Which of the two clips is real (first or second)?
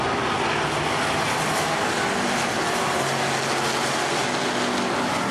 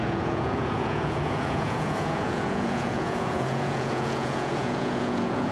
first